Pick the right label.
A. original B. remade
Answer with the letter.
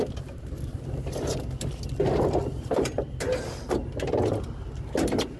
A